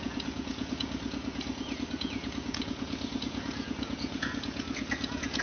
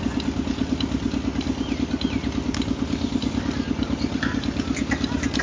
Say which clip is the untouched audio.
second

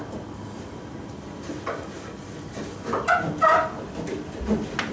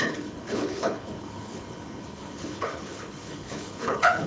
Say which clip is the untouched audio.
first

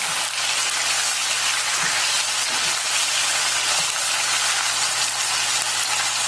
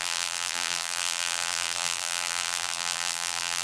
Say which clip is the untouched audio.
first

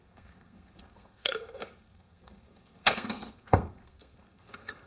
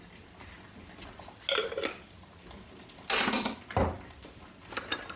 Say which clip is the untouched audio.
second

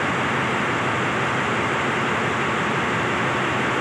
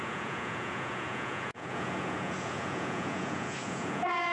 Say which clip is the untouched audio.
first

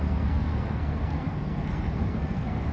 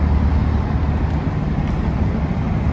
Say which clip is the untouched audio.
second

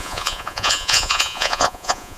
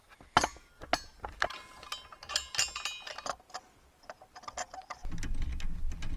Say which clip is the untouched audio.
second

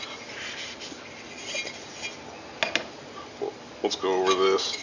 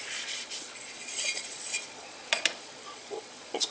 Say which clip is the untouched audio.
first